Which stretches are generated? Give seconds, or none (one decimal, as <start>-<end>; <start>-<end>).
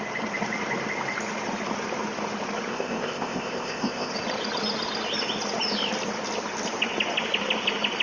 2.7-4.1